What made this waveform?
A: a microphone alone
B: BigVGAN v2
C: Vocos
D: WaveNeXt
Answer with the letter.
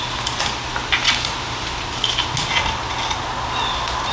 A